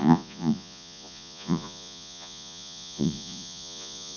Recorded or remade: remade